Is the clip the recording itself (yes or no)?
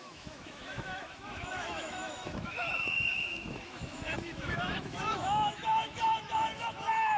no